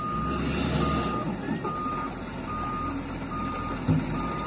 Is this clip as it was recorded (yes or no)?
yes